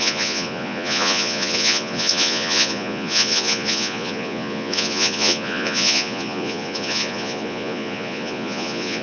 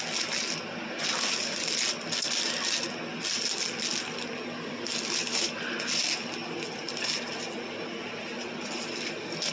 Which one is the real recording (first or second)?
second